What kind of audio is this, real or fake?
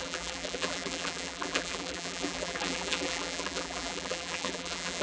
fake